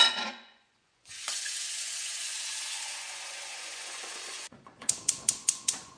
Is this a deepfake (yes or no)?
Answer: yes